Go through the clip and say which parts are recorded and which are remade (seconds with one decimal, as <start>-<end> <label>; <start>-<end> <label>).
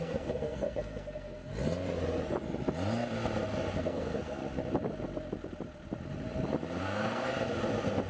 0.0-1.5 remade; 1.5-3.8 recorded; 3.8-4.4 remade; 4.4-6.8 recorded; 6.8-7.3 remade; 7.3-8.1 recorded